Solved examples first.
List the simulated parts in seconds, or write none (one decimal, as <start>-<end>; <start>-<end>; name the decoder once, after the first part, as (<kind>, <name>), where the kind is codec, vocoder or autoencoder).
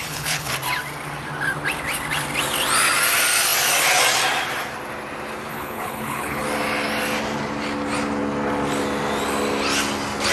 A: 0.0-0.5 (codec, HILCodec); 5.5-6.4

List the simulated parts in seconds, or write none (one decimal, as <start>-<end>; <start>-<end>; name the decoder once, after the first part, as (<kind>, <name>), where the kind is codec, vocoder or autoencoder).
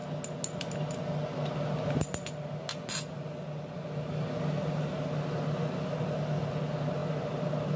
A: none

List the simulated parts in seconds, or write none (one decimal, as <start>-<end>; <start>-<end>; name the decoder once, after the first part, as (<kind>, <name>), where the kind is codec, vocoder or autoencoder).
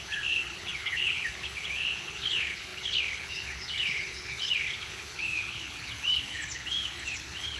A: 0.0-7.6 (codec, HILCodec)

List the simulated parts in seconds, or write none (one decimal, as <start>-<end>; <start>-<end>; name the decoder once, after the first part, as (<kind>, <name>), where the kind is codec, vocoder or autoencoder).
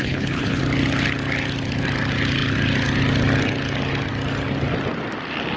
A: 0.0-0.6 (codec, HILCodec)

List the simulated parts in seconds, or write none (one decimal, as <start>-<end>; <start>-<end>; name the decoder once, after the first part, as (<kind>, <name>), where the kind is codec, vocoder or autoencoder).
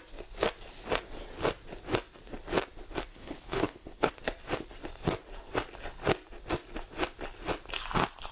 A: 3.1-4.1 (codec, HILCodec)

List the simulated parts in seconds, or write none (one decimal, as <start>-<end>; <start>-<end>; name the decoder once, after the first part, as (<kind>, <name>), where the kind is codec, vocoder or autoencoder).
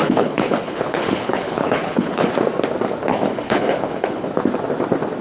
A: 0.0-2.3 (codec, HILCodec); 3.1-4.3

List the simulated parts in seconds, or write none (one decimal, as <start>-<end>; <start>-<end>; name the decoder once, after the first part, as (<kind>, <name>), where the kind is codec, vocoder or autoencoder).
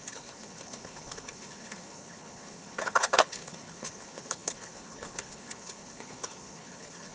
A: 0.0-7.1 (codec, HILCodec)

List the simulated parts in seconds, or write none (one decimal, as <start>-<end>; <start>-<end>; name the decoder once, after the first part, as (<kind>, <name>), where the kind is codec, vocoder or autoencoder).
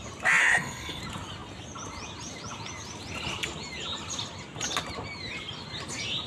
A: 0.4-1.0 (codec, HILCodec)